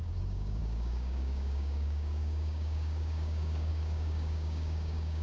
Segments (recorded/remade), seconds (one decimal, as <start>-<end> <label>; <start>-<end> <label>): 0.0-5.2 remade